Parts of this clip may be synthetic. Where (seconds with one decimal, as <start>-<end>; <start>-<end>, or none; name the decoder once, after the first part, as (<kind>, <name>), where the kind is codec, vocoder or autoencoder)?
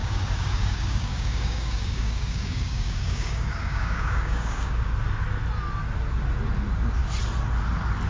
0.0-4.9 (codec, DAC)